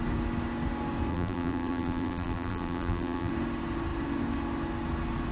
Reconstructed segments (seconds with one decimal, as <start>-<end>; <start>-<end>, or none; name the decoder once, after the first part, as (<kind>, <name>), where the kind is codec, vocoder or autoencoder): 1.1-3.3 (vocoder, BigVGAN v2)